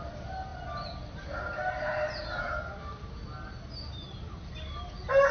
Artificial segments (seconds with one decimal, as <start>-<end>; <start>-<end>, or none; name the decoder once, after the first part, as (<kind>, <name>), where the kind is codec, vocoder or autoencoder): none